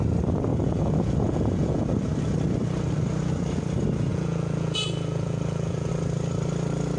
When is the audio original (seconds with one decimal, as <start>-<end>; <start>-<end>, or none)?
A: 0.0-0.5; 1.8-4.1; 5.9-7.0